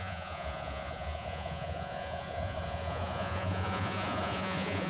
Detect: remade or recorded remade